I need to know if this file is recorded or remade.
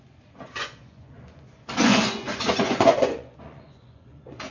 remade